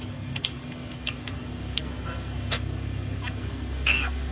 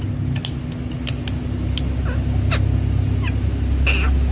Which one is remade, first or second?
first